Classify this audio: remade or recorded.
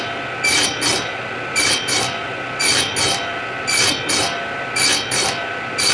recorded